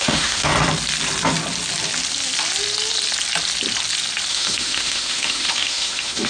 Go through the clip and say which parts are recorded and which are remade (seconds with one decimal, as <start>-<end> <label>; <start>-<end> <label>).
0.0-0.5 remade; 0.5-4.3 recorded; 4.3-6.3 remade